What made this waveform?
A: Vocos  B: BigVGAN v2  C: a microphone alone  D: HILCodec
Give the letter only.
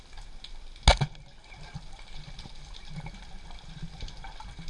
C